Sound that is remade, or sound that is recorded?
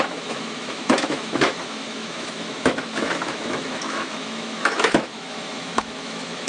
remade